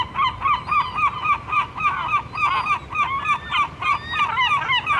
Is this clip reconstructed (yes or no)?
no